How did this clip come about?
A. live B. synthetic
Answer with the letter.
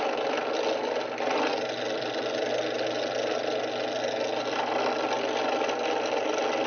A